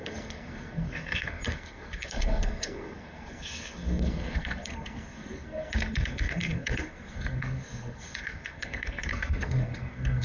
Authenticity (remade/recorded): remade